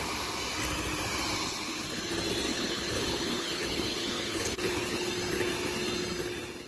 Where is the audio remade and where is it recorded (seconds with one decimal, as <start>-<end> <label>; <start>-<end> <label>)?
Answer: 0.0-1.5 recorded; 1.5-2.0 remade; 2.0-2.5 recorded; 2.5-5.1 remade; 5.1-6.7 recorded